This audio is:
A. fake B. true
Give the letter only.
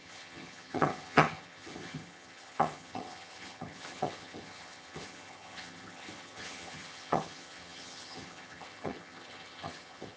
A